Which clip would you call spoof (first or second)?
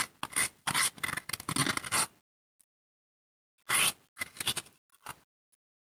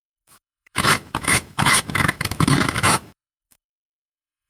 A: second